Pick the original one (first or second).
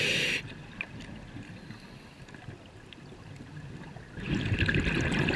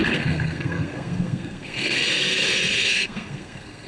first